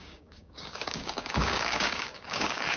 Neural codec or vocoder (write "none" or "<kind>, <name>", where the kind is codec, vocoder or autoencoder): codec, DAC